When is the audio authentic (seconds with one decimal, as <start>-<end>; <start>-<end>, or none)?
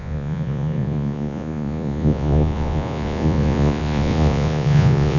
none